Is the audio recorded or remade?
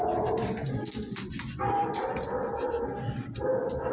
recorded